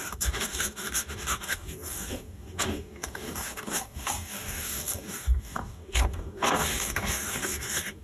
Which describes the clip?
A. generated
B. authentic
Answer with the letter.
A